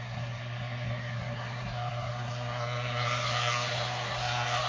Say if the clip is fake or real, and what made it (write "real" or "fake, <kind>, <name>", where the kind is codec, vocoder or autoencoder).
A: fake, codec, SNAC